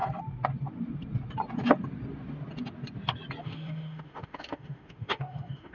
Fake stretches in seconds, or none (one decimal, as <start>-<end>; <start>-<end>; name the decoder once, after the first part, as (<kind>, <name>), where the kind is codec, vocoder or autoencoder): 3.4-5.7 (autoencoder, DAC-VAE)